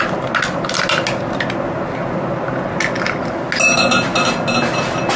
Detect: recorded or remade recorded